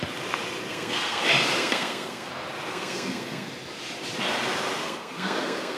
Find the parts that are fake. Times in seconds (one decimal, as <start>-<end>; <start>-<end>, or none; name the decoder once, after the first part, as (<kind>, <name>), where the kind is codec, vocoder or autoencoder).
0.7-1.2 (codec, SNAC); 1.6-2.3; 2.7-3.5; 4.8-5.8